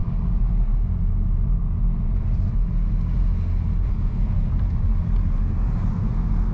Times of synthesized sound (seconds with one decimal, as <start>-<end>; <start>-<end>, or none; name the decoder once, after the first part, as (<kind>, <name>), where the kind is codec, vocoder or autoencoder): 3.9-4.5 (codec, SNAC); 5.9-6.5